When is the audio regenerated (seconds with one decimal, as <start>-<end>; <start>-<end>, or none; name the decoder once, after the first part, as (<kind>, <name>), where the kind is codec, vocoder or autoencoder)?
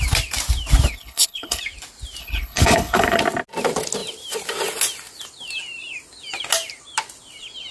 0.9-1.6 (codec, HILCodec); 2.2-3.2